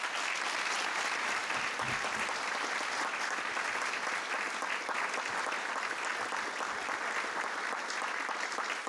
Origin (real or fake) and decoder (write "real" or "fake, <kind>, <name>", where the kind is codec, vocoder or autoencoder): real